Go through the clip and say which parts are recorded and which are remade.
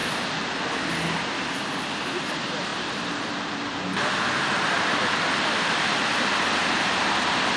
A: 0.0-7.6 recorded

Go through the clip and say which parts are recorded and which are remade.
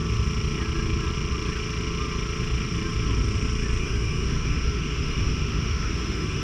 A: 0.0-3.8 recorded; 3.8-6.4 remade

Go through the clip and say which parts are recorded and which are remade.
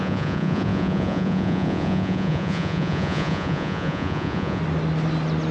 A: 0.0-4.6 remade; 4.6-5.5 recorded